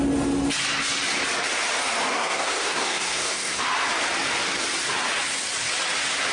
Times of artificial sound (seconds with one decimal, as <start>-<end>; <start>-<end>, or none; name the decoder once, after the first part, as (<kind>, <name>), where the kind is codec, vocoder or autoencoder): 2.1-3.6 (codec, SNAC)

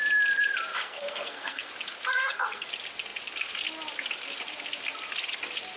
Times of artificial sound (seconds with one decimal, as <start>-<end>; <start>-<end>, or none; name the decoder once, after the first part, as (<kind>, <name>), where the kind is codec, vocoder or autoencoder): 0.7-1.7 (codec, SNAC); 2.2-2.7

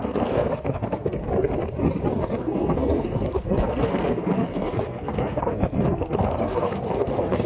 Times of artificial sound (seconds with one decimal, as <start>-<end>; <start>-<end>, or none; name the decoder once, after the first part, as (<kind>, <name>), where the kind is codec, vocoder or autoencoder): 0.0-1.2 (codec, SNAC); 2.4-7.5

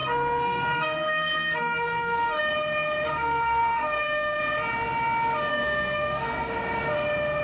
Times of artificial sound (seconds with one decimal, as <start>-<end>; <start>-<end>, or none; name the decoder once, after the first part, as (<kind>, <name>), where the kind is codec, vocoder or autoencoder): 0.0-2.4 (codec, SNAC); 3.1-4.4; 5.5-6.5

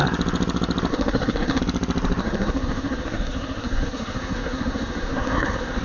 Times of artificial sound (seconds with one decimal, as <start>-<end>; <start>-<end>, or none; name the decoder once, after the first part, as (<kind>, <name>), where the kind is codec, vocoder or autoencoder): 0.9-1.6 (codec, SNAC); 2.2-5.8

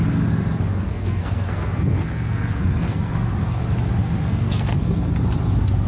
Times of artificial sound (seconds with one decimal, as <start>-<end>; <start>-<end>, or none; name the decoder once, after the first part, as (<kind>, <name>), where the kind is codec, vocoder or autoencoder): 0.7-3.6 (codec, SNAC); 4.0-5.1